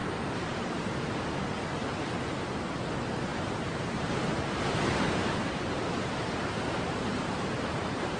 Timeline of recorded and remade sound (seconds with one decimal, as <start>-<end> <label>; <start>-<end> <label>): 0.0-1.2 remade; 1.2-3.3 recorded; 3.3-8.2 remade